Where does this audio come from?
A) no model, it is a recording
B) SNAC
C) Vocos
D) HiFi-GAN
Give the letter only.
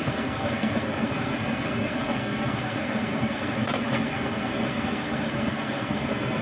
B